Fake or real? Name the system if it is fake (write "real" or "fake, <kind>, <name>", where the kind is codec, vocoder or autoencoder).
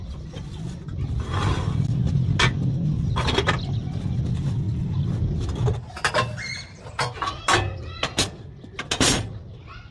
real